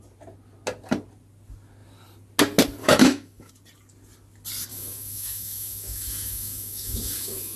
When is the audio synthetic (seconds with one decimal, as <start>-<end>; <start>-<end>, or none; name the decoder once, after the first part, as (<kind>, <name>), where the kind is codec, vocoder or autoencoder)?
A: 2.8-3.5 (autoencoder, DAC-VAE); 4.7-7.6